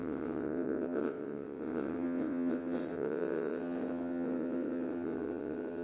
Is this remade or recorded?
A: remade